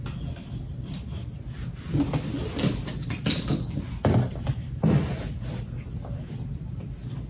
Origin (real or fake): real